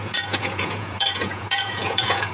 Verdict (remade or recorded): remade